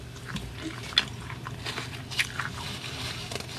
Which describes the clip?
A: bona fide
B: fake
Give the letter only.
A